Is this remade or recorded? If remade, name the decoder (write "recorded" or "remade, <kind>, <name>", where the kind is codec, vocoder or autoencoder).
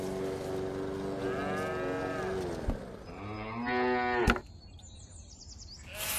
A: recorded